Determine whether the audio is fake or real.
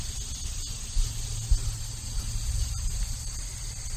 real